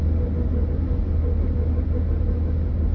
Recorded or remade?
recorded